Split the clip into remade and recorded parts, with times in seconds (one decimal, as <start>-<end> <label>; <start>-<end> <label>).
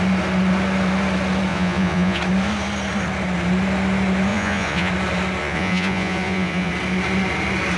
0.0-1.5 recorded; 1.5-2.2 remade; 2.2-4.3 recorded; 4.3-4.9 remade; 4.9-5.4 recorded; 5.4-6.7 remade; 6.7-7.8 recorded